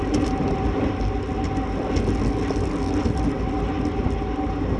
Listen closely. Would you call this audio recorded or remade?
recorded